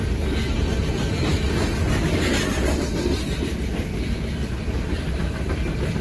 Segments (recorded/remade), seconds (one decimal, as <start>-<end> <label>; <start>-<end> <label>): 0.0-6.0 recorded